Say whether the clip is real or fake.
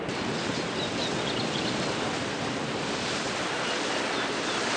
real